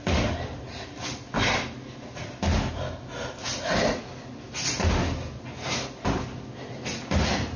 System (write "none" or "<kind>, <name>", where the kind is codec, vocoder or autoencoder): none